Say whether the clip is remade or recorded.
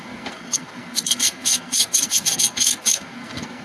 remade